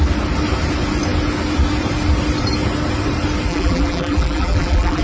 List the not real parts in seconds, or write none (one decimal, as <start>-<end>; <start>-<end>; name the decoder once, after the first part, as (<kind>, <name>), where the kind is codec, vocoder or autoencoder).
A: 3.5-5.0 (vocoder, BigVGAN v2)